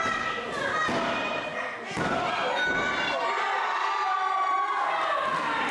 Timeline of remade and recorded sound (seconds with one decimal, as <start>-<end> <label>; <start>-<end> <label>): 0.0-5.7 recorded